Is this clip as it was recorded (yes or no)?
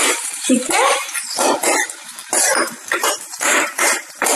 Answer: no